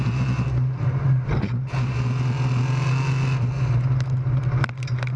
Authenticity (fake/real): real